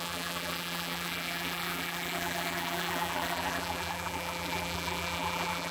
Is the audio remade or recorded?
remade